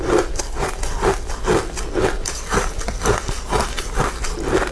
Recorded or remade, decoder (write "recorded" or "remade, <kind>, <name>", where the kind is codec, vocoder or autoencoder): recorded